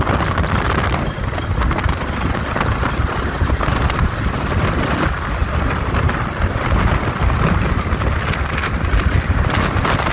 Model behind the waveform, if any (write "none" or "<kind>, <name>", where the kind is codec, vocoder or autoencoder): none